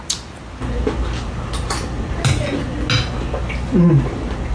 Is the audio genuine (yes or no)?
yes